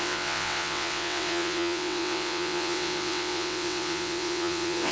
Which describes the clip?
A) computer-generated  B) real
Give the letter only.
A